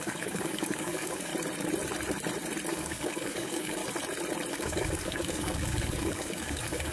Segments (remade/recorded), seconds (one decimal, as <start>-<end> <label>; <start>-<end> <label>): 0.0-1.3 remade; 1.3-2.7 recorded; 2.7-3.8 remade; 3.8-4.5 recorded; 4.5-6.9 remade

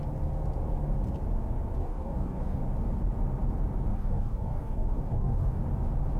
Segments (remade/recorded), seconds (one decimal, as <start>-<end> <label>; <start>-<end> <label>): 0.0-1.8 recorded; 1.8-2.6 remade; 2.6-3.9 recorded; 3.9-5.6 remade; 5.6-6.2 recorded

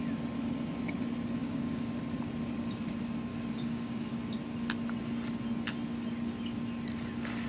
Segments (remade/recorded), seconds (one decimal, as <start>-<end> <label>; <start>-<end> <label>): 0.0-1.4 recorded; 1.4-1.9 remade; 1.9-3.3 recorded; 3.3-4.1 remade; 4.1-7.5 recorded

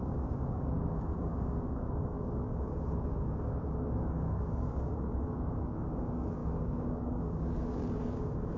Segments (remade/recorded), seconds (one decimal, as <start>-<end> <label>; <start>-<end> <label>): 0.0-8.6 remade